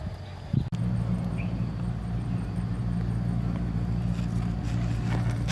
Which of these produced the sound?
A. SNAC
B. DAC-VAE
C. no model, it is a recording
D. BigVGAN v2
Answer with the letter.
C